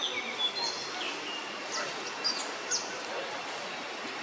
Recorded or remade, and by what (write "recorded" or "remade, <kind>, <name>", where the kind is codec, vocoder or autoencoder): recorded